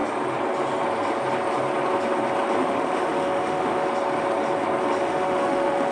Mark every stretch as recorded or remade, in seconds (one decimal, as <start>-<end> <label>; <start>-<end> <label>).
0.0-2.6 recorded; 2.6-3.9 remade; 3.9-5.0 recorded; 5.0-5.9 remade